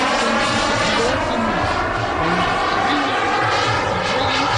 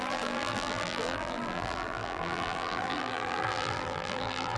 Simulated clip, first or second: second